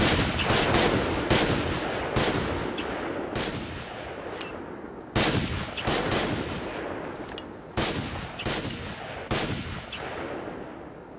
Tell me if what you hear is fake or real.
real